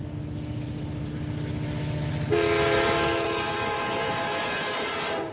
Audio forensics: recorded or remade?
recorded